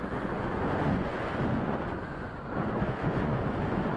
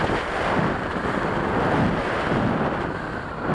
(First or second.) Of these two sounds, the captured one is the second